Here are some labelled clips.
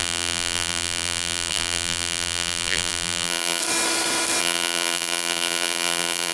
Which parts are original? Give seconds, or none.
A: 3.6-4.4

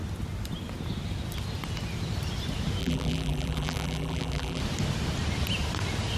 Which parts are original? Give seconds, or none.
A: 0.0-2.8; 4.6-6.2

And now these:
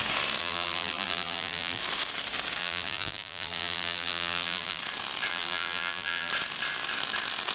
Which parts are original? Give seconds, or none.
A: 0.0-0.4; 1.8-2.6; 4.8-5.3; 6.3-7.5

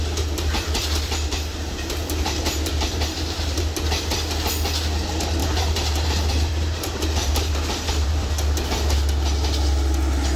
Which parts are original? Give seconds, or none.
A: 0.0-1.5; 3.7-5.4; 8.3-10.4

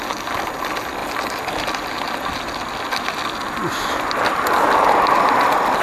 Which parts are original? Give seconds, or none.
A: 0.0-5.8

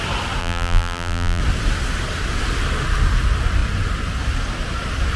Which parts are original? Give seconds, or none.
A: 0.0-0.4; 1.4-5.2

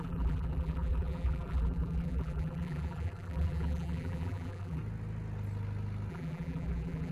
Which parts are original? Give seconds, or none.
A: 4.8-6.1